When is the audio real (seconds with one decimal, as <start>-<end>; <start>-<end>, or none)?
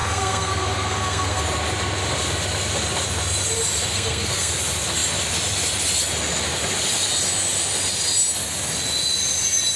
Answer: 1.4-3.9; 4.5-9.8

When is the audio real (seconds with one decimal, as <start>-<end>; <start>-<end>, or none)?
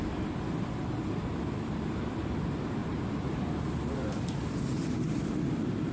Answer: 0.0-5.9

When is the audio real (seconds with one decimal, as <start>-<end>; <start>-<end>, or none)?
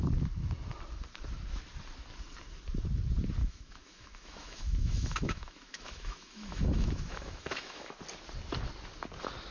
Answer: 0.0-3.4; 8.0-9.5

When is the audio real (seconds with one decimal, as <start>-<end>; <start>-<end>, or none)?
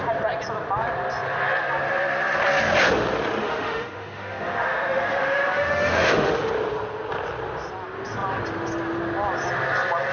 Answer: 0.0-3.4; 6.5-10.1